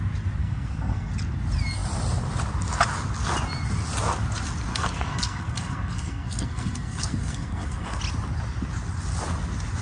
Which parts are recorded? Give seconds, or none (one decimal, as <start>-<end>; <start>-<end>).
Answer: 0.0-0.4; 1.1-4.7; 8.0-9.8